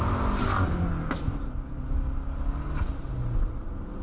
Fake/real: real